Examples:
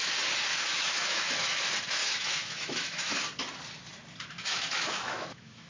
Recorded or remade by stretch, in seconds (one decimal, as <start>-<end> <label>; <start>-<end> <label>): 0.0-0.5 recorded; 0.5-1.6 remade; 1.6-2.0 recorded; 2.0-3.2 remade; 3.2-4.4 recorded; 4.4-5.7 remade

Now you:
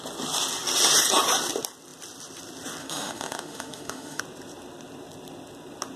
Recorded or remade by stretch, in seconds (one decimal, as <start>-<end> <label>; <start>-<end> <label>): 0.0-2.8 recorded; 2.8-4.2 remade; 4.2-6.0 recorded

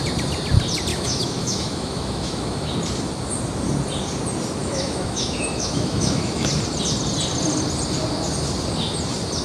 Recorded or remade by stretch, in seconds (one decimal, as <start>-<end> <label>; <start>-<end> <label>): 0.0-0.9 recorded; 0.9-2.7 remade; 2.7-4.6 recorded; 4.6-6.5 remade; 6.5-9.4 recorded